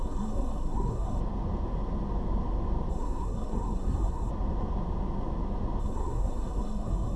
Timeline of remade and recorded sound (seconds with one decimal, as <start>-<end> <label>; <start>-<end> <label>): 0.0-1.2 remade; 1.2-2.9 recorded; 2.9-4.3 remade; 4.3-5.8 recorded; 5.8-7.2 remade